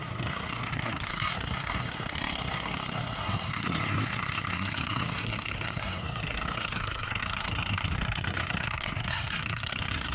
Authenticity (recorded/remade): remade